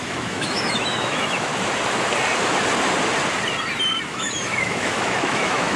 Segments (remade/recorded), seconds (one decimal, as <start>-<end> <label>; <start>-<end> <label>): 0.0-1.5 remade; 1.5-4.1 recorded; 4.1-5.8 remade